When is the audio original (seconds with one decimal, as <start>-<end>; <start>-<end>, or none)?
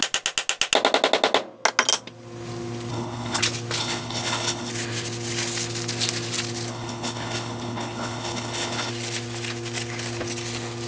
0.0-2.9; 3.4-3.8; 4.7-6.7; 8.9-10.9